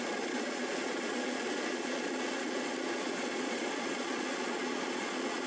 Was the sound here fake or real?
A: fake